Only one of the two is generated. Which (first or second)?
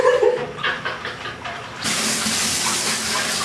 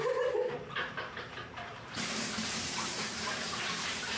second